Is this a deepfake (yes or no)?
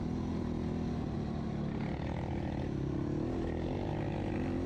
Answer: no